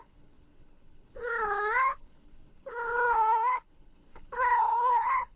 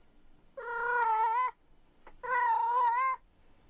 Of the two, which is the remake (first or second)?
first